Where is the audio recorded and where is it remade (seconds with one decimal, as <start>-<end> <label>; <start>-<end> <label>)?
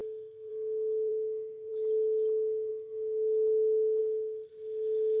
0.0-0.5 remade; 0.5-5.2 recorded